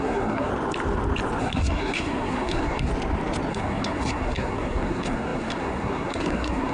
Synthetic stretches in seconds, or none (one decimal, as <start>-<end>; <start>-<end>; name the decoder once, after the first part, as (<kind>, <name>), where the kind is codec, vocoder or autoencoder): 0.0-0.5 (codec, SNAC); 1.4-2.9; 3.5-6.7